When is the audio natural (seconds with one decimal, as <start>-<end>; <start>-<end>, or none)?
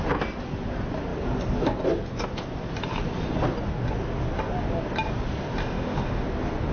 0.0-5.6; 6.2-6.7